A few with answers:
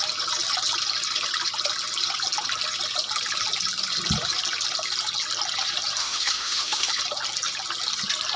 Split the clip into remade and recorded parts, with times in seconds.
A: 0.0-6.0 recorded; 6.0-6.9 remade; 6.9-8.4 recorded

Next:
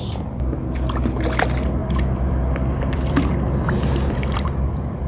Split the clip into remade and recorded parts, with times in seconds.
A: 0.0-1.8 recorded; 1.8-5.1 remade